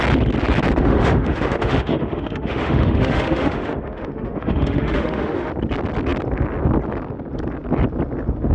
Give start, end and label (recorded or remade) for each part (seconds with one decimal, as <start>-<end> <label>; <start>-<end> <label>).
0.0-0.8 recorded; 0.8-5.5 remade; 5.5-8.5 recorded